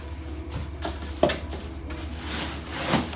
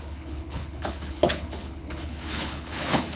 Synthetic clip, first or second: second